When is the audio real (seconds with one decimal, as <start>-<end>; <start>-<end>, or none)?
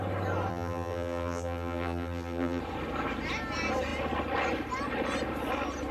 0.0-0.5; 2.6-5.9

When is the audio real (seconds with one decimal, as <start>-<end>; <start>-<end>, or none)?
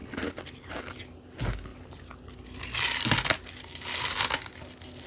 0.0-5.1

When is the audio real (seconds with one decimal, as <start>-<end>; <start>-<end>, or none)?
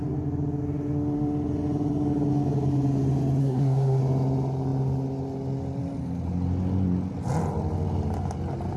0.0-3.4; 4.0-8.8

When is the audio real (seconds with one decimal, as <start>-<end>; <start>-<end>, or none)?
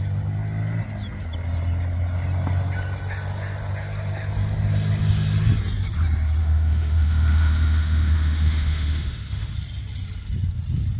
0.0-6.4; 9.5-11.0